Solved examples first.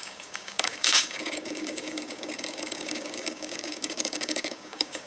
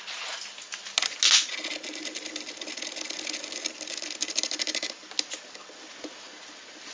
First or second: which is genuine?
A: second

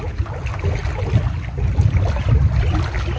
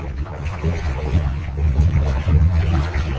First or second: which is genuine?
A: first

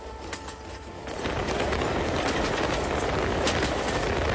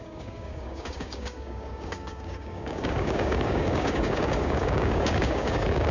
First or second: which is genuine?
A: first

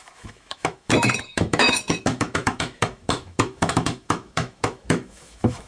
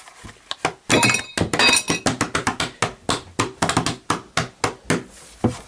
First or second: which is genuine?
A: second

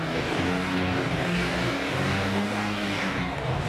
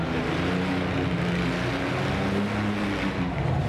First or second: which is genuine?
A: second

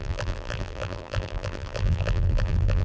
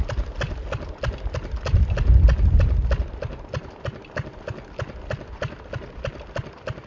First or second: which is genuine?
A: second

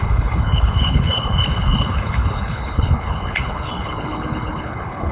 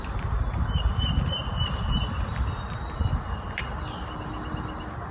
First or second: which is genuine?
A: second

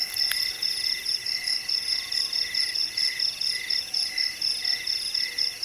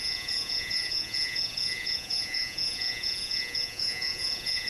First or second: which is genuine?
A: first